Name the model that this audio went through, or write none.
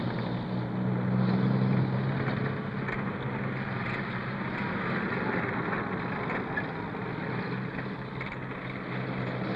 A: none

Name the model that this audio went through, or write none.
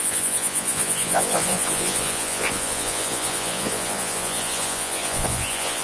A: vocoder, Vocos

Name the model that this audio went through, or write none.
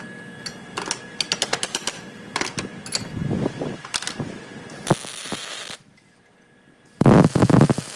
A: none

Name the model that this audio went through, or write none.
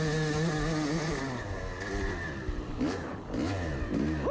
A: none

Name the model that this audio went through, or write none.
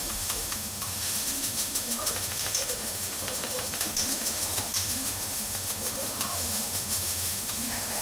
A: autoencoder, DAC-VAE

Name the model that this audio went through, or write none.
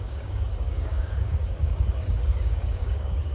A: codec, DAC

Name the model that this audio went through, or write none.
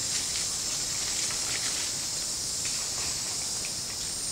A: none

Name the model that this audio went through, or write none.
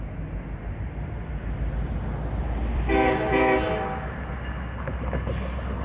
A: none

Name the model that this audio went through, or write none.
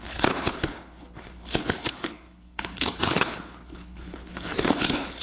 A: codec, HILCodec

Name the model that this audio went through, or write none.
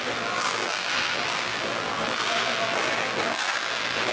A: vocoder, BigVGAN v2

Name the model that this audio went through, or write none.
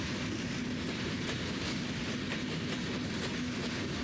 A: none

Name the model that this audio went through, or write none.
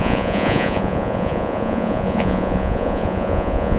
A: vocoder, Vocos